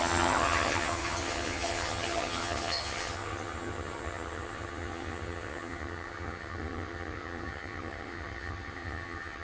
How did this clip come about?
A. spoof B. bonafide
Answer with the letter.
A